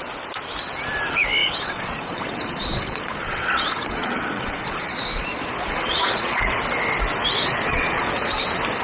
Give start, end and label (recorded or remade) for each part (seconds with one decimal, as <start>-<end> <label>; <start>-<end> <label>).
0.0-1.4 recorded; 1.4-6.6 remade; 6.6-7.7 recorded; 7.7-8.3 remade; 8.3-8.8 recorded